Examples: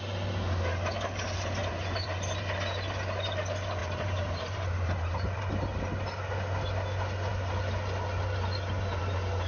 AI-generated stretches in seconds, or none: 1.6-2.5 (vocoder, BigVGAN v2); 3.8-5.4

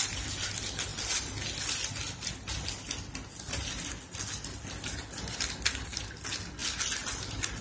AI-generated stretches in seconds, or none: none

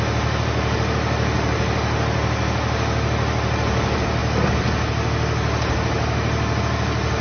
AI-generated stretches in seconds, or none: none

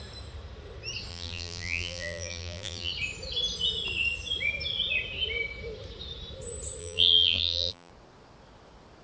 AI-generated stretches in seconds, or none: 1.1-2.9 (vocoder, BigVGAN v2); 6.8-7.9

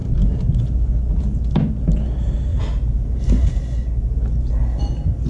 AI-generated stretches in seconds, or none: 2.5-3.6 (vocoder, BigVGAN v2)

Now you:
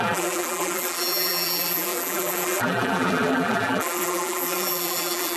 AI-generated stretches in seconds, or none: 0.0-5.4 (vocoder, BigVGAN v2)

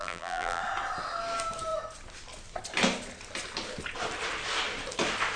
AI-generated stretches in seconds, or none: 0.0-0.6 (vocoder, BigVGAN v2)